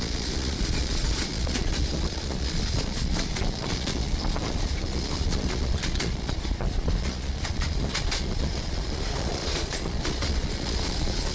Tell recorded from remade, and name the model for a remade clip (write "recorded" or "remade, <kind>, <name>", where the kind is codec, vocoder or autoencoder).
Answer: remade, vocoder, Vocos